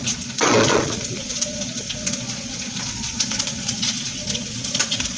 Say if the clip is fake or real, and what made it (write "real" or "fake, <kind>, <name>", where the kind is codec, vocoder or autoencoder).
fake, vocoder, Vocos